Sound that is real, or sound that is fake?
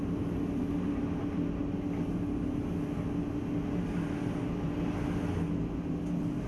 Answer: real